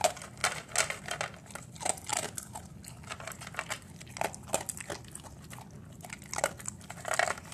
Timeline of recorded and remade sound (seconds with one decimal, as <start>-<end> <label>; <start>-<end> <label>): 0.0-7.5 recorded